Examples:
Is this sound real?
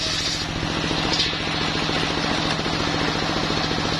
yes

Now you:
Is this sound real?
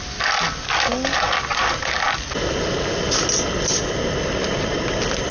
yes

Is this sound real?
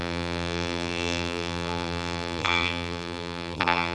no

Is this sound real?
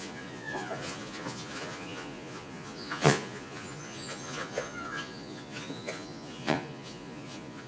no